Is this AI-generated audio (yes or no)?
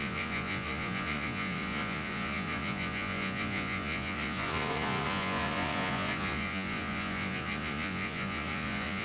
yes